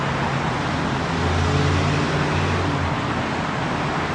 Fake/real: real